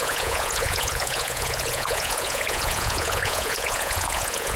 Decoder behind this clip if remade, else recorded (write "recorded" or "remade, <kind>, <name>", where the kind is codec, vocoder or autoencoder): remade, vocoder, Vocos